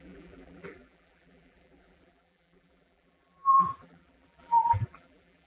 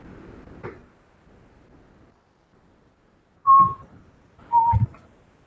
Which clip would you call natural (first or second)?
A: second